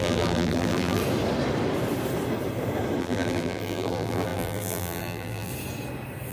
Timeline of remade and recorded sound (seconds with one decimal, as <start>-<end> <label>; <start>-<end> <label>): 0.0-1.0 remade; 1.0-3.0 recorded; 3.0-5.5 remade; 5.5-6.3 recorded